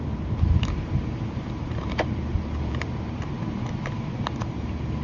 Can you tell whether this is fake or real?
fake